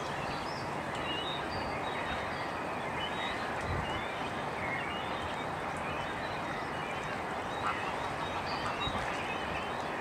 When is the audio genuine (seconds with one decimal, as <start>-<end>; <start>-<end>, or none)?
0.0-10.0